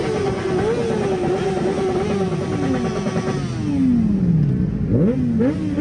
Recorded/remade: recorded